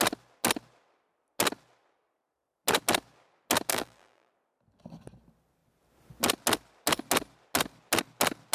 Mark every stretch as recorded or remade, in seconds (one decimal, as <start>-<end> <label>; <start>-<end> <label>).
0.0-3.7 recorded; 3.7-4.3 remade; 4.3-8.5 recorded